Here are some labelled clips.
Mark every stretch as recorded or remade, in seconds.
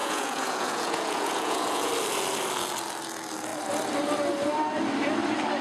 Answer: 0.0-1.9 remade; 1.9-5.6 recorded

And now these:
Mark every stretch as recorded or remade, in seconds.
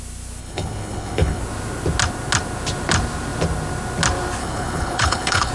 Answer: 0.0-0.4 recorded; 0.4-1.4 remade; 1.4-4.4 recorded; 4.4-5.5 remade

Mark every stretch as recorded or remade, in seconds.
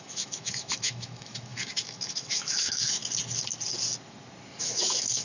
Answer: 0.0-3.0 remade; 3.0-4.6 recorded; 4.6-5.2 remade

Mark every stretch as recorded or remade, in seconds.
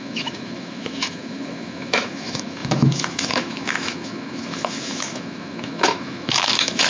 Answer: 0.0-6.9 remade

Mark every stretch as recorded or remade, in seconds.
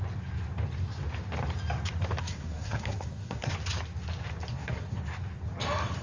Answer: 0.0-2.2 recorded; 2.2-3.5 remade; 3.5-4.5 recorded; 4.5-5.0 remade; 5.0-6.0 recorded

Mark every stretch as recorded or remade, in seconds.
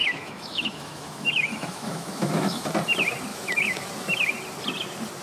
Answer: 0.0-2.7 remade; 2.7-3.3 recorded; 3.3-3.9 remade; 3.9-5.2 recorded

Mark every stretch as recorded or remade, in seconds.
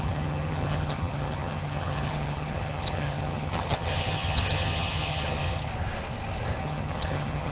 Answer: 0.0-5.7 remade; 5.7-6.6 recorded; 6.6-7.5 remade